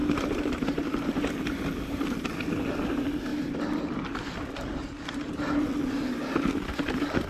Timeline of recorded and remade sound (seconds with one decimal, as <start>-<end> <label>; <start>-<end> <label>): 0.0-2.3 remade; 2.3-3.3 recorded; 3.3-5.9 remade; 5.9-7.3 recorded